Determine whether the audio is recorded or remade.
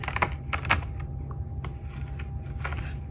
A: recorded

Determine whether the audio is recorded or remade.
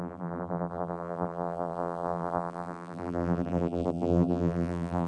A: remade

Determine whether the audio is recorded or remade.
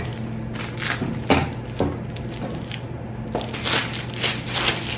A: recorded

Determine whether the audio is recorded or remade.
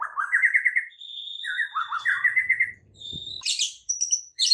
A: remade